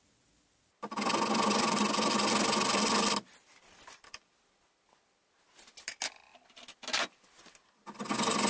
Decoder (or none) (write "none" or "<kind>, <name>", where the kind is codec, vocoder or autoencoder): none